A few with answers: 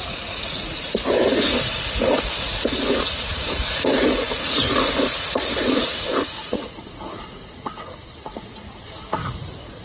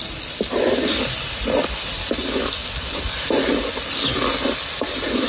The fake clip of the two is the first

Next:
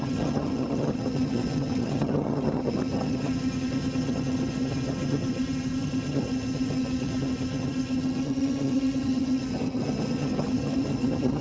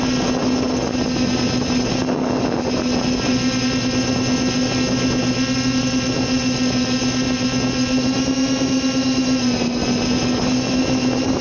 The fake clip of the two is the first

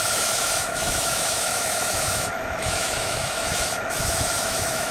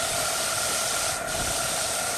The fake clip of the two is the first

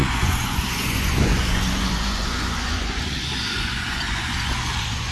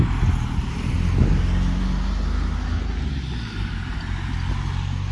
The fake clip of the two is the first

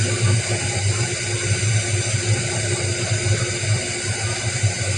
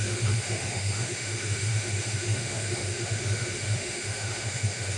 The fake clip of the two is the second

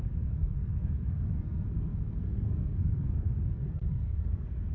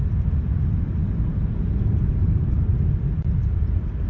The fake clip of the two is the first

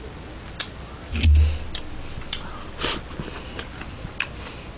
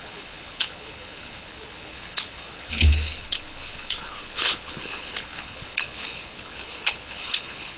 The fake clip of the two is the second